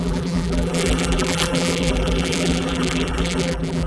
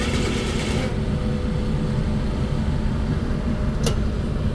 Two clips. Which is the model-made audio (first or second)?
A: first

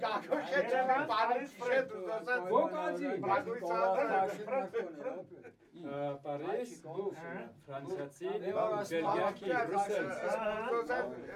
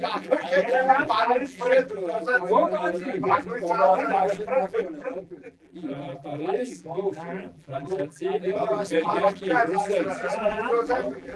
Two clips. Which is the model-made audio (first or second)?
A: second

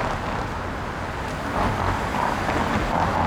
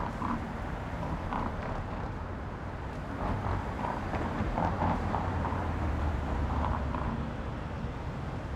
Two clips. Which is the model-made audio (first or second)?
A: second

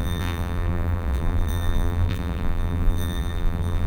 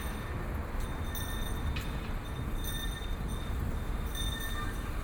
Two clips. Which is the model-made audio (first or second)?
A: first